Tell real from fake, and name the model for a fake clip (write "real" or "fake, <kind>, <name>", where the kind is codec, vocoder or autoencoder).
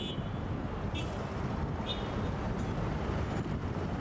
real